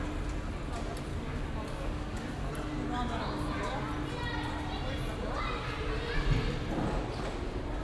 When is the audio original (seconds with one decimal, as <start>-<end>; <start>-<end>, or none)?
0.0-1.1; 2.5-7.8